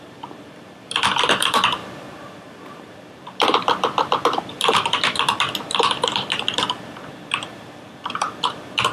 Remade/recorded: remade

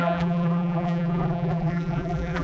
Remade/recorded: remade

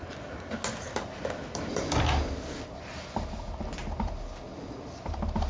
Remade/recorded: recorded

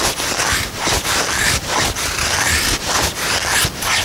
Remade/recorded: recorded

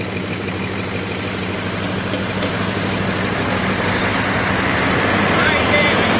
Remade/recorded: recorded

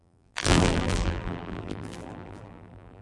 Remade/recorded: remade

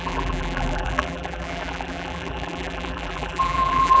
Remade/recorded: remade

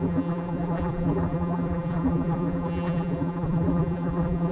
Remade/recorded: remade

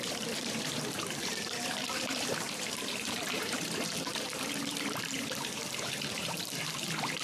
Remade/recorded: remade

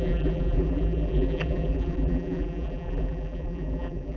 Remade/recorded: remade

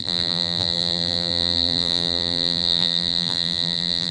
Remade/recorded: remade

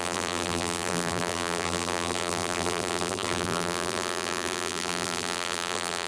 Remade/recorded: remade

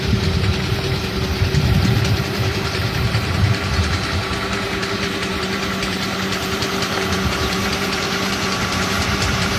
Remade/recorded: remade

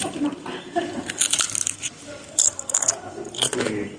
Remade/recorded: remade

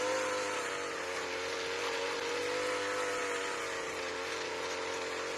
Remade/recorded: recorded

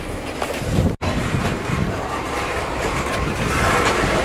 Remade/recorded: remade